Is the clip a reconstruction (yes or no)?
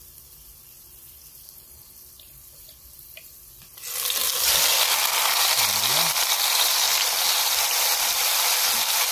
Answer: yes